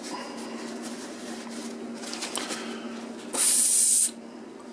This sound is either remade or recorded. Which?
recorded